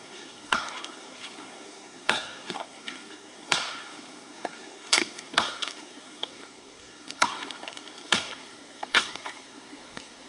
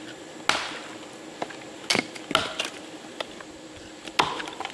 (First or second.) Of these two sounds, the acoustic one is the second